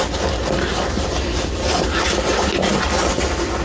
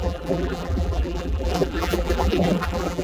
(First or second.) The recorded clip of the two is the first